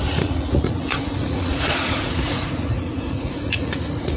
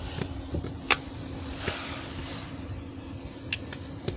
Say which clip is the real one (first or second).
second